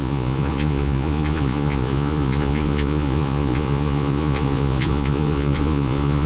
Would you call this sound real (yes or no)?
no